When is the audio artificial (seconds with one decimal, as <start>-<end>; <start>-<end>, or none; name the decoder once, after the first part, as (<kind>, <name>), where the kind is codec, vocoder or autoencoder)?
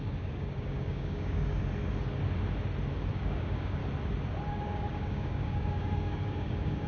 0.0-1.6 (codec, DAC); 3.1-3.8; 4.5-6.9